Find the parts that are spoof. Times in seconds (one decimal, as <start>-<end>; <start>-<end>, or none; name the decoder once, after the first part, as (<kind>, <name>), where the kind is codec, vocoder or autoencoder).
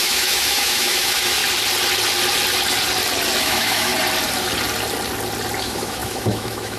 0.0-1.4 (autoencoder, DAC-VAE); 3.4-3.9; 5.6-6.8